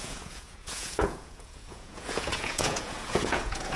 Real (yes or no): no